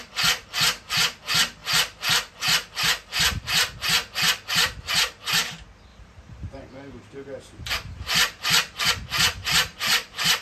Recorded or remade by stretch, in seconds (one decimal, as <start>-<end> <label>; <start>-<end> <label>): 0.0-5.9 recorded; 5.9-8.9 remade; 8.9-9.4 recorded; 9.4-10.4 remade